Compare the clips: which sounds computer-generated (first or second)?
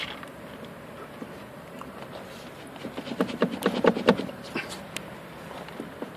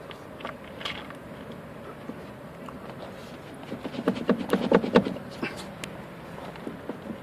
first